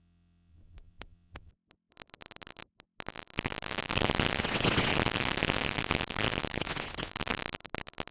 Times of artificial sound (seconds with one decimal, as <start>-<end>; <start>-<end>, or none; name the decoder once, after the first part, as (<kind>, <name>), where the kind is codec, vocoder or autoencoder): 0.0-1.5 (vocoder, WaveNeXt); 4.4-4.9; 6.6-7.1

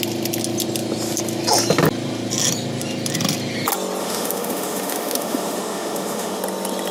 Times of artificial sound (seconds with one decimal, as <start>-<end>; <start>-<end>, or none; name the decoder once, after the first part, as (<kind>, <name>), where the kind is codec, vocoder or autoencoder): 4.0-6.4 (autoencoder, DAC-VAE)

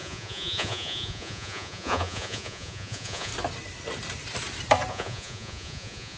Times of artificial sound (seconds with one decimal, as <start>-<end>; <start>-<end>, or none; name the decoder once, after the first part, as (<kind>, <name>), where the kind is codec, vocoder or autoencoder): 0.0-3.3 (vocoder, Vocos); 4.9-6.2

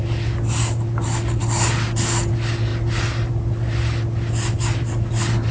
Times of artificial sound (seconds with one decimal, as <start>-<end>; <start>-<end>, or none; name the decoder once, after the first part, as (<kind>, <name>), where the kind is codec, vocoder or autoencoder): none

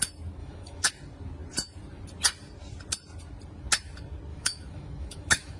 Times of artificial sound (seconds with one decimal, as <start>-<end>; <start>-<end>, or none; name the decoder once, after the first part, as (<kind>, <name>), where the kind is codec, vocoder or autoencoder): 0.4-0.9 (autoencoder, DAC-VAE); 4.3-5.6

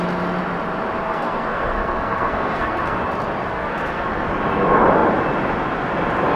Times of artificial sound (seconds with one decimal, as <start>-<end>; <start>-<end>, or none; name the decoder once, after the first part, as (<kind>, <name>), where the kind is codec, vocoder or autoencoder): 1.0-3.0 (codec, SNAC); 3.4-4.0

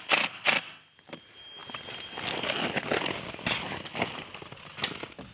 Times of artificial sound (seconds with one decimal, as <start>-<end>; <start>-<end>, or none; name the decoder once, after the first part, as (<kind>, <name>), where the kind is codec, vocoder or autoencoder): none